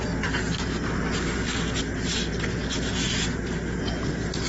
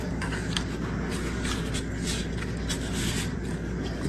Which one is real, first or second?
first